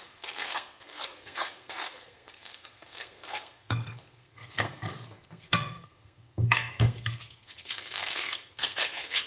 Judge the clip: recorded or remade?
remade